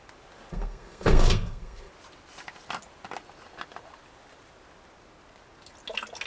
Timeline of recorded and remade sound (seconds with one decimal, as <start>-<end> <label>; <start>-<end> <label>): 0.0-0.5 recorded; 0.5-1.9 remade; 1.9-6.3 recorded